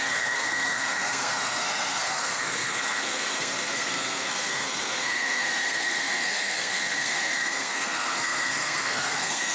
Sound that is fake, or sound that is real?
fake